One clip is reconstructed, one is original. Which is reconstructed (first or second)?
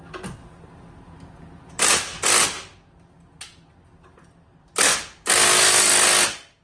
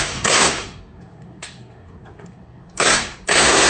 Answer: second